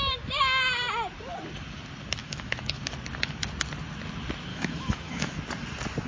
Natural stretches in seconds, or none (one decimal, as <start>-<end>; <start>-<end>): 0.0-2.2; 2.8-4.5; 5.3-6.1